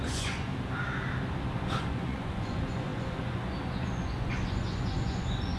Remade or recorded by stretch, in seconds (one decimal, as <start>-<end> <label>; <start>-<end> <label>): 0.0-0.5 remade; 0.5-1.5 recorded; 1.5-5.6 remade